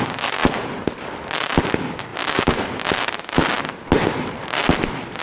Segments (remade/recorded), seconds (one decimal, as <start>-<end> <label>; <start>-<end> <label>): 0.0-0.4 recorded; 0.4-1.6 remade; 1.6-2.1 recorded; 2.1-3.2 remade; 3.2-4.0 recorded; 4.0-5.2 remade

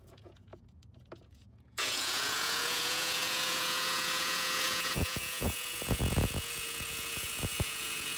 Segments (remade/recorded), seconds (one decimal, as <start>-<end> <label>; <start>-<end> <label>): 0.0-8.2 remade

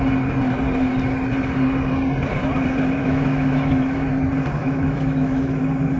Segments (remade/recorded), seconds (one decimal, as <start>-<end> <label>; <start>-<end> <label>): 0.0-3.0 recorded; 3.0-4.1 remade; 4.1-4.6 recorded; 4.6-5.6 remade; 5.6-6.0 recorded

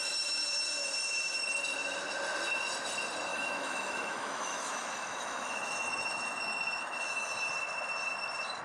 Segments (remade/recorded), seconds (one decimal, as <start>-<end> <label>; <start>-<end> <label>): 0.0-3.3 recorded; 3.3-7.5 remade; 7.5-8.6 recorded

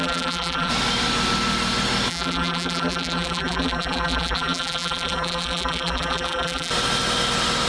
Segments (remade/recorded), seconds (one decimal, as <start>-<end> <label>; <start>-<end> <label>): 0.0-0.7 remade; 0.7-2.1 recorded; 2.1-6.7 remade; 6.7-7.7 recorded

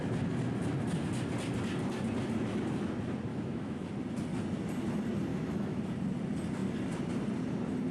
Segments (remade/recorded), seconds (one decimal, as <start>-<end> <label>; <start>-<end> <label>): 0.0-3.3 recorded; 3.3-3.9 remade; 3.9-5.3 recorded; 5.3-5.8 remade; 5.8-7.9 recorded